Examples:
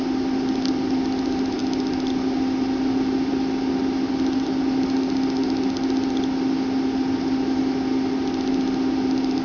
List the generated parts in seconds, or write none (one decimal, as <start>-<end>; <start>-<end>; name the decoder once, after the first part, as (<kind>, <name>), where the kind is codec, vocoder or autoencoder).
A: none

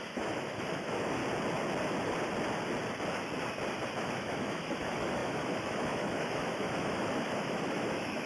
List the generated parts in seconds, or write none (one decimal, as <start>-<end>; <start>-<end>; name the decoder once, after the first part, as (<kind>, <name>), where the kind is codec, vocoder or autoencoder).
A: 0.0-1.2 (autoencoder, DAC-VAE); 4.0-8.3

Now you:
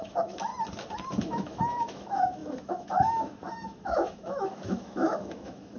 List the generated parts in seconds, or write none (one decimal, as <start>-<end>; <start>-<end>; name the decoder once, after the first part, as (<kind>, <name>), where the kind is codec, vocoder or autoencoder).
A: 0.0-0.5 (autoencoder, DAC-VAE); 1.2-5.8

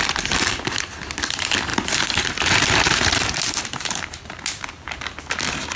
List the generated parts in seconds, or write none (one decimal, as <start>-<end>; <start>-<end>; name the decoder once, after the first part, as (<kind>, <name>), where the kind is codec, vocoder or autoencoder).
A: 1.7-5.2 (vocoder, BigVGAN v2)

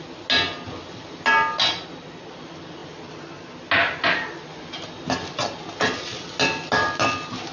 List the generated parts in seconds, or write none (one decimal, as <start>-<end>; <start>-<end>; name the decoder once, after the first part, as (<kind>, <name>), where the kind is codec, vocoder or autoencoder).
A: none

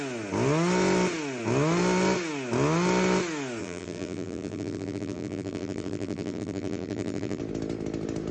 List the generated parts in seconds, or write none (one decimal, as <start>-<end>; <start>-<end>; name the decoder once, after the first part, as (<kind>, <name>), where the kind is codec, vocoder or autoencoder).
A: 3.6-7.4 (vocoder, BigVGAN v2)

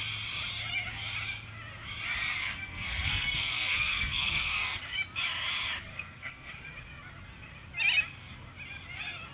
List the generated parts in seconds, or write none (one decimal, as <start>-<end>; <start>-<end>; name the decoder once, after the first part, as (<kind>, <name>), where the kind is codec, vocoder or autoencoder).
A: 2.4-4.8 (codec, SNAC); 5.9-6.5

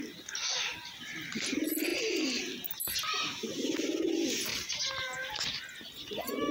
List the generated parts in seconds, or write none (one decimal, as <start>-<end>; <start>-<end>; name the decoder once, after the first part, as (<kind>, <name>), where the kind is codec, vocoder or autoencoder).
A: none